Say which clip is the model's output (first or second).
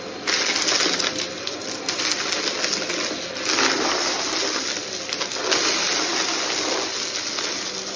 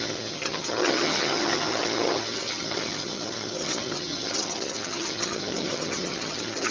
second